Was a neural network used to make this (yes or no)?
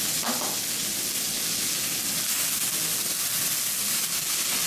no